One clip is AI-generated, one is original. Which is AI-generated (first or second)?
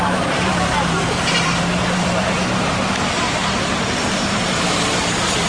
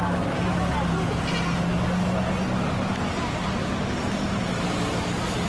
first